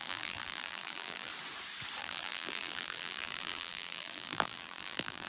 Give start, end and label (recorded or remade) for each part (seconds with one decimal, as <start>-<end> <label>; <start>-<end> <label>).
0.0-1.3 remade; 1.3-2.0 recorded; 2.0-5.3 remade